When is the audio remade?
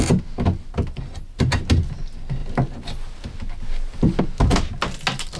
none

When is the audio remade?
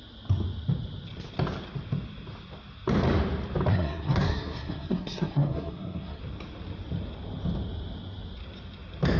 3.7-6.2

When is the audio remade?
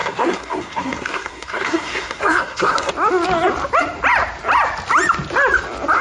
0.0-2.9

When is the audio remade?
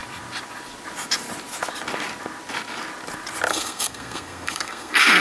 3.5-5.2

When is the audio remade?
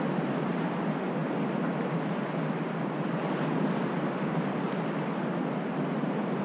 none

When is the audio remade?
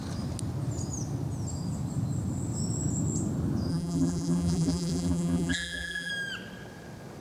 3.7-6.1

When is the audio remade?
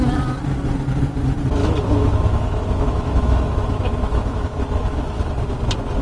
1.6-5.2